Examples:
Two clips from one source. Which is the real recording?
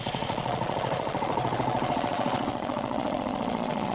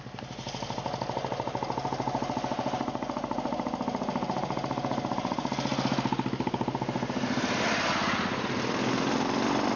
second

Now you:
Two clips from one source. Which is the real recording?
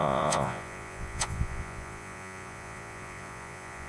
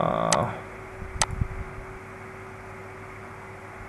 second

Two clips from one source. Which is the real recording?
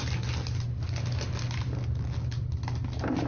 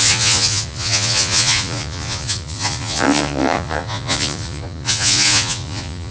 first